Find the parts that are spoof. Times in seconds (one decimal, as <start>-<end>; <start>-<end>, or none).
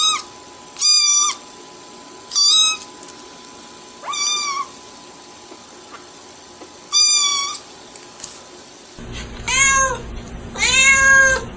none